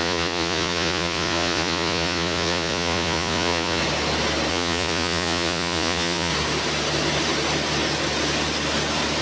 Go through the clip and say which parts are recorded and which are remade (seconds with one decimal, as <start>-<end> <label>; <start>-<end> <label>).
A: 0.0-3.8 remade; 3.8-4.5 recorded; 4.5-6.3 remade; 6.3-9.2 recorded